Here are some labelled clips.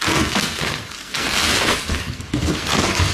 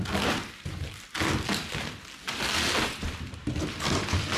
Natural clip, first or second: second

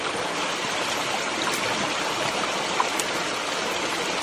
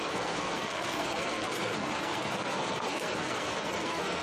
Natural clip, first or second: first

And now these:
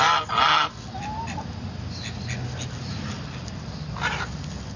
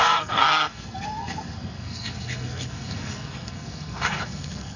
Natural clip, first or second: first